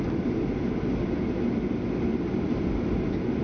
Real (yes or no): yes